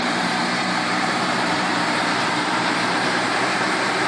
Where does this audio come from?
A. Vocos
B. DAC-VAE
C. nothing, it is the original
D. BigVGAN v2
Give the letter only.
D